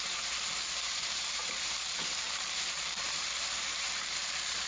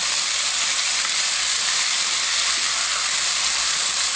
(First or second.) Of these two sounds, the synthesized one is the first